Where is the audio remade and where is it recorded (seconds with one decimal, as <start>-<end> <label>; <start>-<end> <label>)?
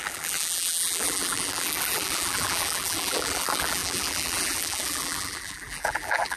0.0-6.4 remade